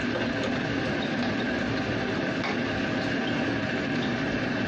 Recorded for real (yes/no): yes